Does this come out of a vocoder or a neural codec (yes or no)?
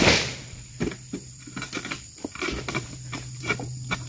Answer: no